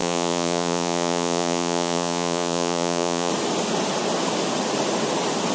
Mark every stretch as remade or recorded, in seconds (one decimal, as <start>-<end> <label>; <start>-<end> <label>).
0.0-3.3 remade; 3.3-5.5 recorded